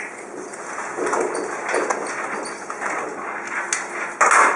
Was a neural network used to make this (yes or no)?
no